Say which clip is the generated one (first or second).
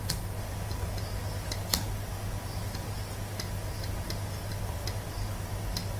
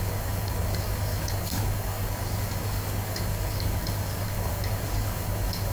second